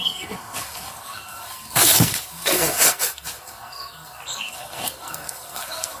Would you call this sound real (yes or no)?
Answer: no